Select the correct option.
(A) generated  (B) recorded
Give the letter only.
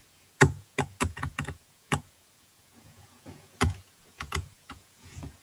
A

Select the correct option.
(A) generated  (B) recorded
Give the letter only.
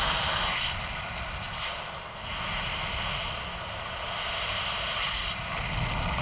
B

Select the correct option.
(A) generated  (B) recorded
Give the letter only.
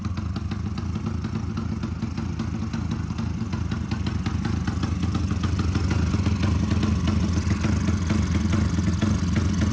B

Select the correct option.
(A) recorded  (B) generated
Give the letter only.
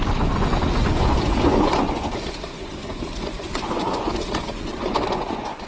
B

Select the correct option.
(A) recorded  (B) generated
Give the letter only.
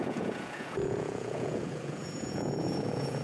B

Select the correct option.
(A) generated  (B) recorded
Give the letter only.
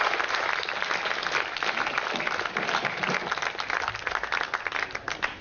B